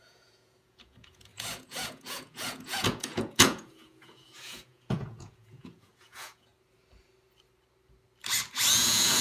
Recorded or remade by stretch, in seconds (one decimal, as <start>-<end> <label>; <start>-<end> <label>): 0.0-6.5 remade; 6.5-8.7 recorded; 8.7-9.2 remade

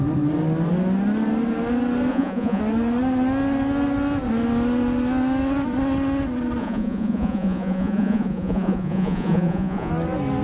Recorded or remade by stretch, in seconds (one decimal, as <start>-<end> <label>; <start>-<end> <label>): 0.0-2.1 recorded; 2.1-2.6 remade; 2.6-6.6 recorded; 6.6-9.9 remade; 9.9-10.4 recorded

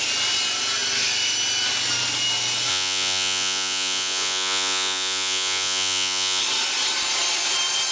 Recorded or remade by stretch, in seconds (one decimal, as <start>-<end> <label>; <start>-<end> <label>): 0.0-2.7 recorded; 2.7-6.4 remade; 6.4-7.9 recorded